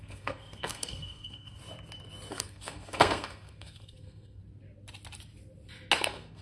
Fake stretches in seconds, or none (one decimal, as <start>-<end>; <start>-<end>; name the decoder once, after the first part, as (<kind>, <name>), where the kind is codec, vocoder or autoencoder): 0.0-1.6 (codec, SNAC); 2.3-4.4; 6.0-6.4